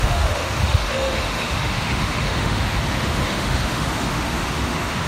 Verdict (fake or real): fake